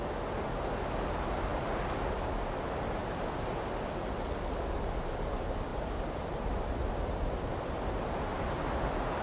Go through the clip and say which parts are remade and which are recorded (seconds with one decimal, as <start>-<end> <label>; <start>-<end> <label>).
0.0-3.0 recorded; 3.0-3.6 remade; 3.6-5.7 recorded; 5.7-7.1 remade; 7.1-9.2 recorded